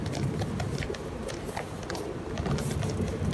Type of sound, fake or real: real